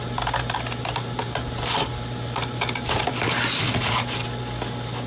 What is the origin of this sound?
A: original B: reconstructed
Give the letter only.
A